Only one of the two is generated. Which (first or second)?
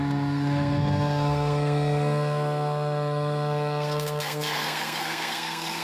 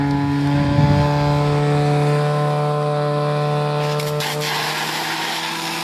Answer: first